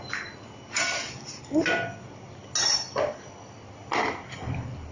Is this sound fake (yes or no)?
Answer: no